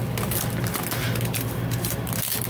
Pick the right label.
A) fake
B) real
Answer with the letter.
A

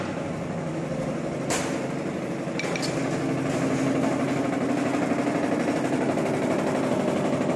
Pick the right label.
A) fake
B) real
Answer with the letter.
B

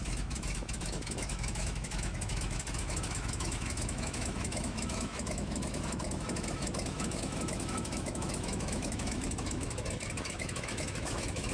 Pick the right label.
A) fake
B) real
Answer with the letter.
A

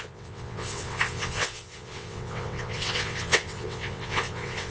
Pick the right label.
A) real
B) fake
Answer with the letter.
B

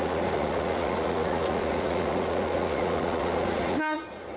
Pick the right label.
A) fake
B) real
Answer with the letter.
A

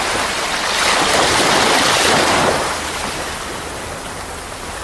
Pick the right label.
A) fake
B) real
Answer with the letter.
B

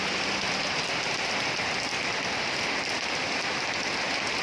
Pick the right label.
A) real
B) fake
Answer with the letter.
A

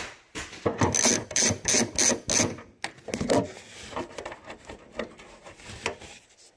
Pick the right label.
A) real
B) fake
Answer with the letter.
A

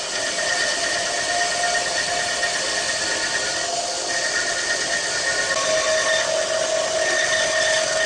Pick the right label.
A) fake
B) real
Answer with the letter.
B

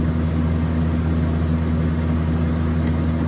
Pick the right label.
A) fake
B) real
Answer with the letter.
B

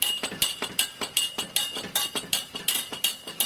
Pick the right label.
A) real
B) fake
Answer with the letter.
B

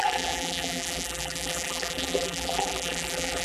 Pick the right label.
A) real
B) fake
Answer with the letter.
B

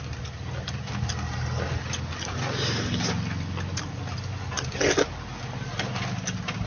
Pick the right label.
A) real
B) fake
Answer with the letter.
A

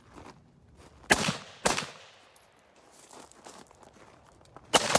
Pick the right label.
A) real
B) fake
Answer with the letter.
A